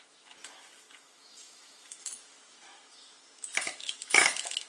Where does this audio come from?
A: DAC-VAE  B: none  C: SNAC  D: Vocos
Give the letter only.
A